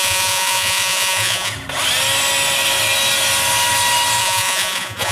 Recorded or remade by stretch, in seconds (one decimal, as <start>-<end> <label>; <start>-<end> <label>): 0.0-1.5 remade; 1.5-4.2 recorded; 4.2-5.1 remade

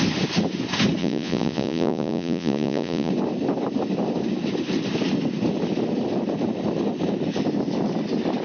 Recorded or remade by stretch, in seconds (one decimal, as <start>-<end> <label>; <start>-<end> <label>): 0.0-1.0 recorded; 1.0-3.1 remade; 3.1-8.4 recorded